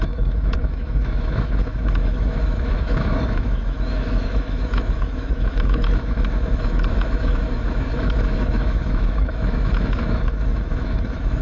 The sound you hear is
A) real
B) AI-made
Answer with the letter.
B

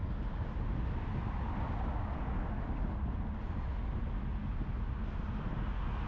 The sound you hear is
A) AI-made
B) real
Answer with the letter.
B